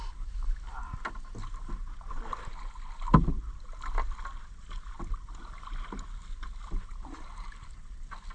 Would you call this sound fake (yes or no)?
no